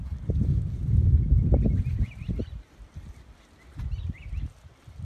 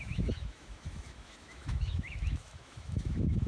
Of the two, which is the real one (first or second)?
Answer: first